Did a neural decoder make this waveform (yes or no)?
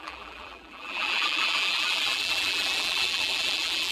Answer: yes